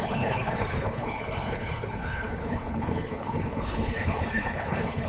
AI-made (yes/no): yes